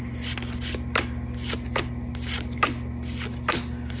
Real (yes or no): yes